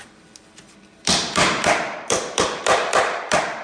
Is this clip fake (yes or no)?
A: yes